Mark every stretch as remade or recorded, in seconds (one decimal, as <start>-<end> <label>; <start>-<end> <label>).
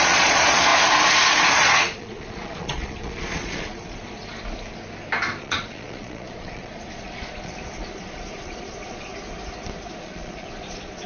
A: 0.0-0.7 remade; 0.7-1.5 recorded; 1.5-4.2 remade; 4.2-5.4 recorded; 5.4-9.1 remade; 9.1-10.0 recorded; 10.0-11.1 remade